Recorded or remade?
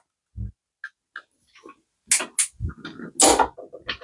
recorded